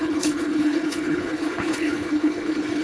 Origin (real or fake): fake